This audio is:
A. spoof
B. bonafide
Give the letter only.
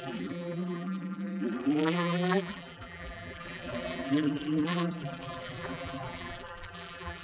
A